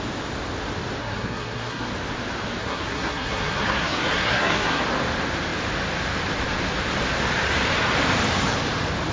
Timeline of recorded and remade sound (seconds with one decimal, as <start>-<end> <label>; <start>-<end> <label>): 0.0-1.0 recorded; 1.0-1.9 remade; 1.9-2.6 recorded; 2.6-4.8 remade; 4.8-9.1 recorded